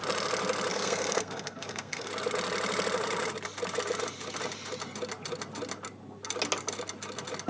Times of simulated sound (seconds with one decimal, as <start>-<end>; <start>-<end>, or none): 0.7-2.1